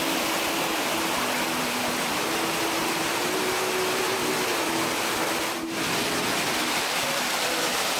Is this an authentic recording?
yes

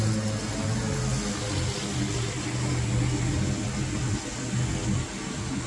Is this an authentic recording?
yes